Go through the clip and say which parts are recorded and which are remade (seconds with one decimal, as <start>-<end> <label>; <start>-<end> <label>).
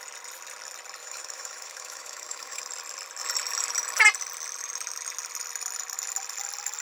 0.0-1.0 recorded; 1.0-2.6 remade; 2.6-6.8 recorded